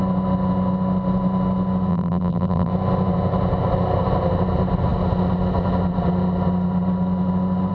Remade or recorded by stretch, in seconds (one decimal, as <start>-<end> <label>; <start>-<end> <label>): 0.0-1.9 recorded; 1.9-2.7 remade; 2.7-7.7 recorded